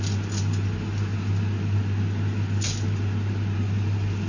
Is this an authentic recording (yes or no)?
yes